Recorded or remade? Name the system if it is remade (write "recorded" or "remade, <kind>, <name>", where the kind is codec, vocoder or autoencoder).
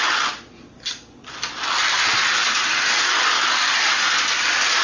recorded